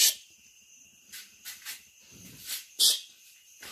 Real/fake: fake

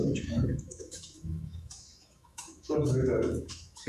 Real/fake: fake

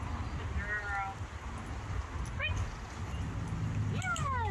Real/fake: real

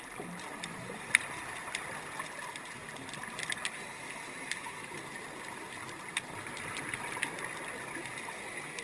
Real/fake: real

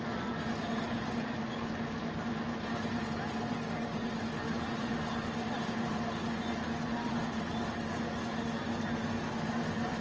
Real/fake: real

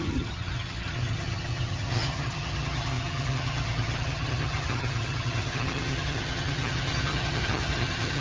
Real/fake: fake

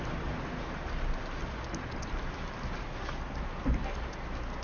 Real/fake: real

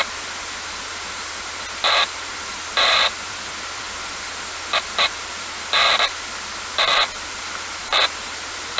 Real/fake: real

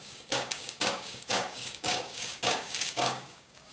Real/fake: fake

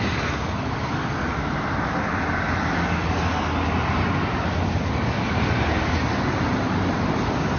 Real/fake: real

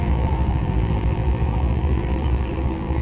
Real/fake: fake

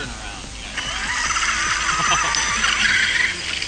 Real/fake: real